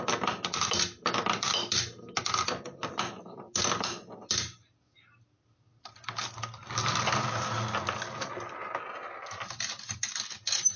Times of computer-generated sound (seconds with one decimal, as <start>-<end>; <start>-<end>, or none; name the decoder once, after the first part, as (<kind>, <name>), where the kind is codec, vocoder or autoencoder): none